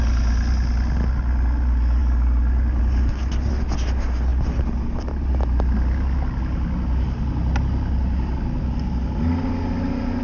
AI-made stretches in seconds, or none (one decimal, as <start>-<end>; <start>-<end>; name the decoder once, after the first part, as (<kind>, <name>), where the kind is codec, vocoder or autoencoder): none